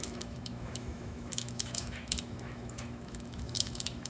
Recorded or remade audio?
remade